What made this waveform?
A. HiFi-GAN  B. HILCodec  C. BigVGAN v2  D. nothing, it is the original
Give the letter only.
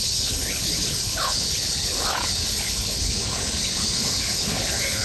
B